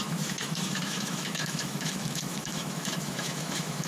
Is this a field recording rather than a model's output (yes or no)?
no